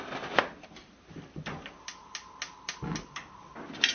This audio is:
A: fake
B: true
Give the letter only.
B